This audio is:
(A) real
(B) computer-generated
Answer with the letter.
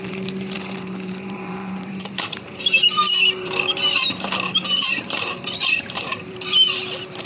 B